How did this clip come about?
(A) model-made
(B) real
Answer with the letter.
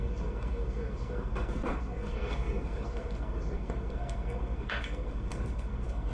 A